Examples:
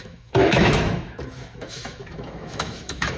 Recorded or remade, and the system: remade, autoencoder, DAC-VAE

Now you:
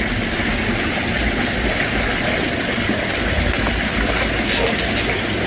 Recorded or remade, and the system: recorded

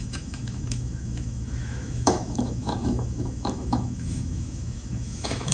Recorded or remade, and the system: remade, autoencoder, DAC-VAE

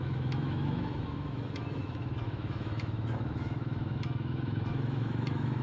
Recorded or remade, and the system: remade, autoencoder, DAC-VAE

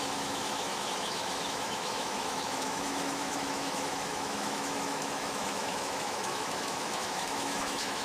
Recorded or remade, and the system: remade, autoencoder, DAC-VAE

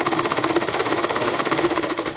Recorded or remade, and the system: remade, autoencoder, DAC-VAE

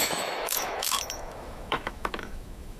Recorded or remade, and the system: remade, autoencoder, DAC-VAE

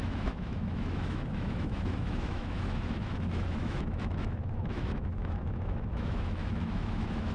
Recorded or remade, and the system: remade, autoencoder, DAC-VAE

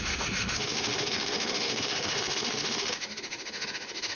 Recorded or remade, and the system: remade, autoencoder, DAC-VAE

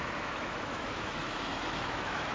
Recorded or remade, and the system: remade, autoencoder, DAC-VAE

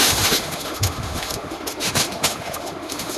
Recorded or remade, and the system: remade, autoencoder, DAC-VAE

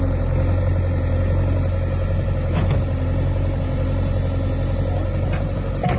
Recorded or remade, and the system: recorded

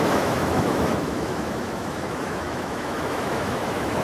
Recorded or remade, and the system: remade, autoencoder, DAC-VAE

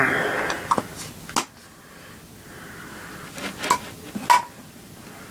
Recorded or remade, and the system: recorded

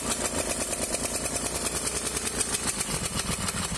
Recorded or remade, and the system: recorded